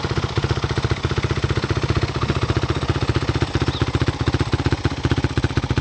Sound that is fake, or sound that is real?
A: real